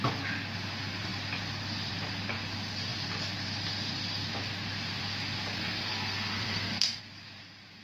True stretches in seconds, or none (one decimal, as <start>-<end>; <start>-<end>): 0.0-5.6; 7.0-7.8

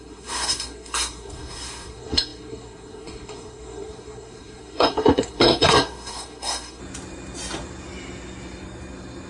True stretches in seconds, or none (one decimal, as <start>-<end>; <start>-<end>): 6.8-9.3